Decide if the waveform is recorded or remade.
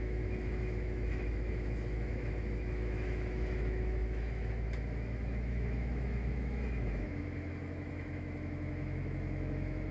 remade